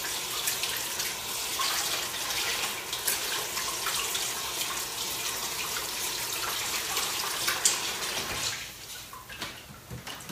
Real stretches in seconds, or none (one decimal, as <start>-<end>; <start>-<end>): 0.0-5.4; 5.9-6.6; 7.2-10.3